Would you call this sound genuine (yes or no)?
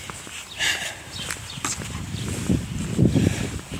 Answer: yes